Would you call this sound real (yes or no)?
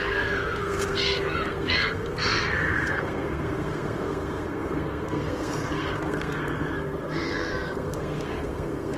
no